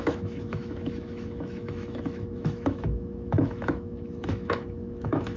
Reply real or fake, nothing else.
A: fake